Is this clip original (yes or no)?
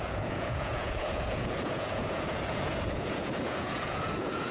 no